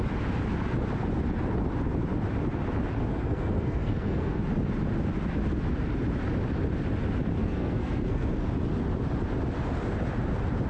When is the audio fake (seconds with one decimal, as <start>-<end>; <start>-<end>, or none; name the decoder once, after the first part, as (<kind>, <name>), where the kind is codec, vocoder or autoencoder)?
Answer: 3.1-4.4 (codec, SNAC); 7.4-8.5